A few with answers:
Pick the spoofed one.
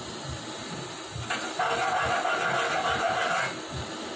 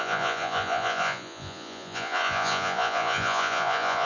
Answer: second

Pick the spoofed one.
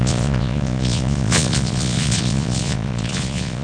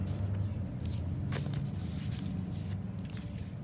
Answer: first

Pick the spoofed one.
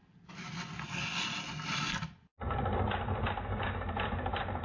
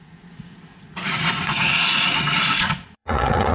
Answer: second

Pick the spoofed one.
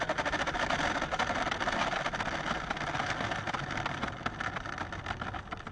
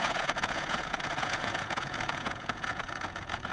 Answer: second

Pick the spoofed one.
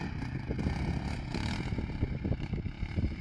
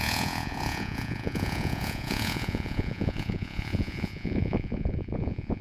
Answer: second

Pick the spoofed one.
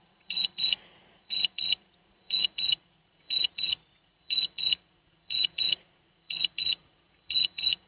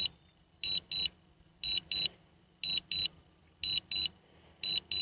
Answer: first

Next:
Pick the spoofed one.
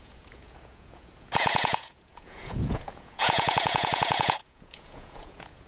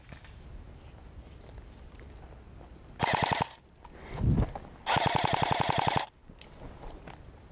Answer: first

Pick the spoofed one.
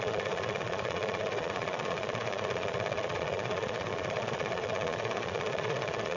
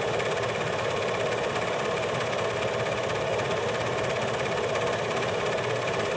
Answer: first